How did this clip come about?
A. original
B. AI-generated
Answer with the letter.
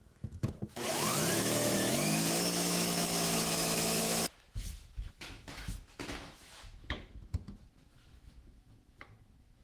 B